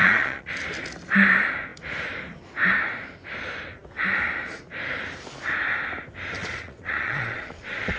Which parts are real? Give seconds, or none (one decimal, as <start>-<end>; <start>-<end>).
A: 0.5-6.4